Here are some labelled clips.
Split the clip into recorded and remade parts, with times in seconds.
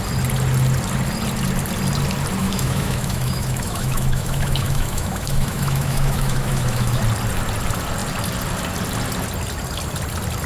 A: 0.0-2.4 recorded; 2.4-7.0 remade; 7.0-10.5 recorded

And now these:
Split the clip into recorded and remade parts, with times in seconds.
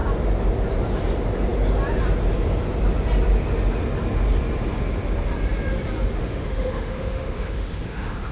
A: 0.0-6.2 recorded; 6.2-8.3 remade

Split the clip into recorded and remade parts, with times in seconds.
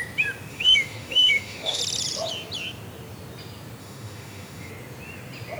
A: 0.0-0.5 recorded; 0.5-1.8 remade; 1.8-3.8 recorded; 3.8-4.7 remade; 4.7-5.6 recorded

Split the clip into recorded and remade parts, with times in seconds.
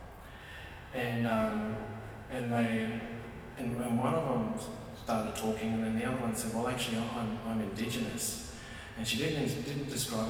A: 0.0-0.4 recorded; 0.4-3.6 remade; 3.6-10.3 recorded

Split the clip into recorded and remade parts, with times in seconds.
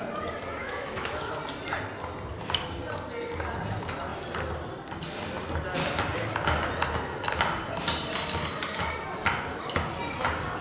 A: 0.0-0.6 recorded; 0.6-1.2 remade; 1.2-10.6 recorded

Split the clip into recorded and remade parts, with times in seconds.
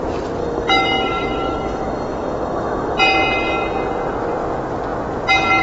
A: 0.0-0.4 recorded; 0.4-3.0 remade; 3.0-5.6 recorded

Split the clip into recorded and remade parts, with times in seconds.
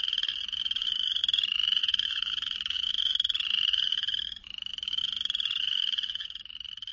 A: 0.0-1.2 remade; 1.2-1.8 recorded; 1.8-3.1 remade; 3.1-3.7 recorded; 3.7-6.9 remade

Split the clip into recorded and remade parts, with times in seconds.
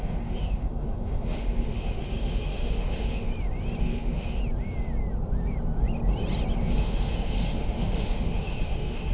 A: 0.0-3.3 remade; 3.3-3.8 recorded; 3.8-4.4 remade; 4.4-6.6 recorded; 6.6-9.1 remade